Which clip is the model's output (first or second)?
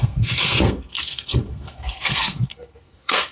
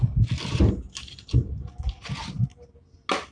first